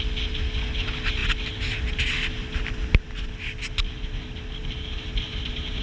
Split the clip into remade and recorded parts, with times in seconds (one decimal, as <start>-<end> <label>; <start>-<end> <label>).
0.0-5.8 recorded